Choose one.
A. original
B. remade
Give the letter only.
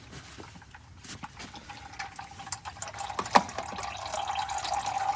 A